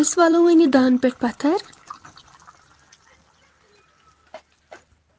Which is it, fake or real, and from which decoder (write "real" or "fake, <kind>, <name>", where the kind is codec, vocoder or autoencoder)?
fake, vocoder, BigVGAN v2